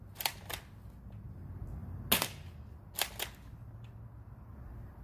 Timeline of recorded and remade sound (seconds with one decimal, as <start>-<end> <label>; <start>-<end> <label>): 0.0-5.0 recorded